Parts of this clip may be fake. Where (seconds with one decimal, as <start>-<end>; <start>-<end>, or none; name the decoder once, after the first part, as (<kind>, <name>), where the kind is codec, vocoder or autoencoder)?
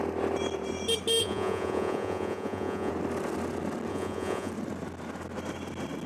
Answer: 1.2-2.9 (vocoder, Vocos); 3.9-4.5